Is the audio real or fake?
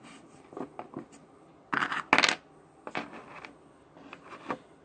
real